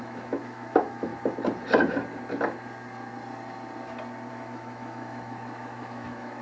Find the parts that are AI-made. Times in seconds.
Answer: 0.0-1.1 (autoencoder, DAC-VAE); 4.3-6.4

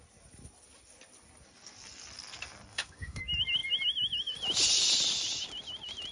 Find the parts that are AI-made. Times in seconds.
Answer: 2.7-3.2 (autoencoder, DAC-VAE)

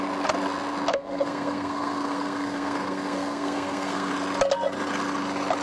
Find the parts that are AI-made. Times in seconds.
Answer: 0.9-4.1 (codec, SNAC)

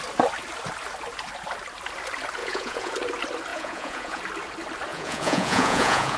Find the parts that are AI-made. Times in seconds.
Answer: 2.4-2.9 (vocoder, Vocos); 3.5-4.2; 4.9-6.2

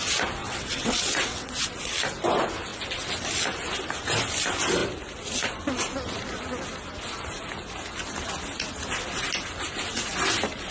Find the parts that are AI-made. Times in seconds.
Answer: 0.4-1.5 (vocoder, WaveNeXt)

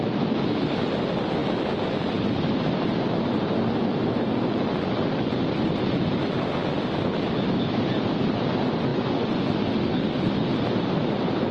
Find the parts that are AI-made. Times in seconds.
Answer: 8.9-9.5 (vocoder, Vocos)